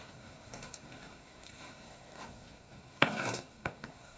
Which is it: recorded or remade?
remade